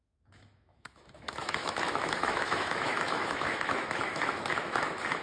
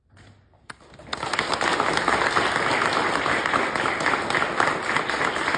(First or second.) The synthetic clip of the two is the first